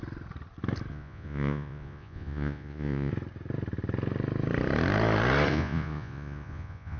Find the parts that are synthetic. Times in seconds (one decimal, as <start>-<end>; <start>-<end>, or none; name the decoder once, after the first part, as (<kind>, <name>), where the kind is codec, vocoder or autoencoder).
0.9-3.1 (vocoder, Vocos); 5.5-7.0